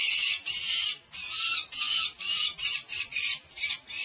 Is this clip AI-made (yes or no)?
no